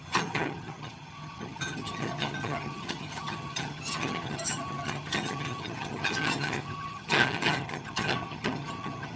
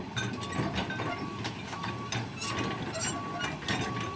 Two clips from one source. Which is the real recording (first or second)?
second